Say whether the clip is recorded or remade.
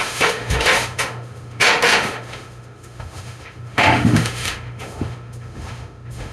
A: remade